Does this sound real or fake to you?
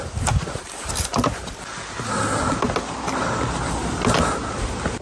real